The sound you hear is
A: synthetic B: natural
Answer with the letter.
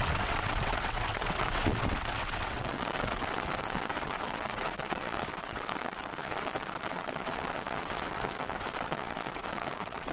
A